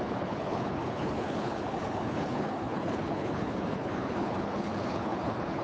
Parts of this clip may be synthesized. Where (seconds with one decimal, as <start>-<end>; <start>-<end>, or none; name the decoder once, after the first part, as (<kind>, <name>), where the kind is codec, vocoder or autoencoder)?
0.0-5.6 (codec, HILCodec)